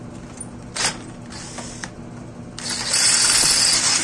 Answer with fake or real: real